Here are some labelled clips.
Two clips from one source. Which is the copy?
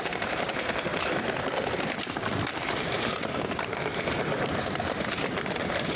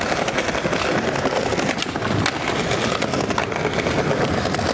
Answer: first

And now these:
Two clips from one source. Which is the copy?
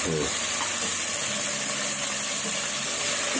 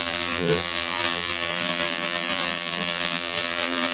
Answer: second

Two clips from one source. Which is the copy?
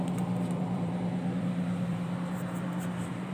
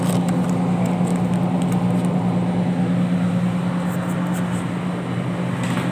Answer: first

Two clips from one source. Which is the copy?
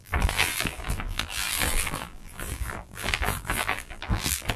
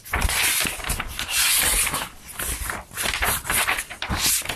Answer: first